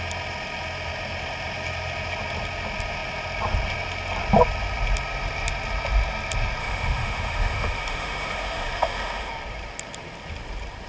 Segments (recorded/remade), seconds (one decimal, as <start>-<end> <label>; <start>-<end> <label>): 0.0-6.6 recorded; 6.6-9.3 remade; 9.3-10.9 recorded